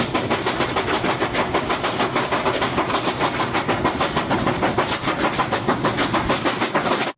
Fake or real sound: real